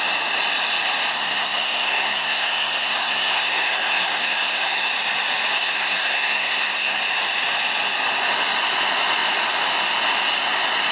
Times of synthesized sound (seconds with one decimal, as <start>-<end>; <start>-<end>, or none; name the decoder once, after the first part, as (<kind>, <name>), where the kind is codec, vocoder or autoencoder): 1.1-4.9 (codec, SNAC); 5.5-7.0